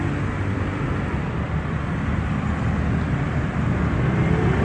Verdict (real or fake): real